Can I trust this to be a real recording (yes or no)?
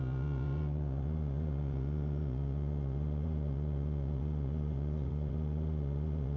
no